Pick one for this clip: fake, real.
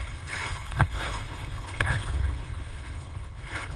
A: fake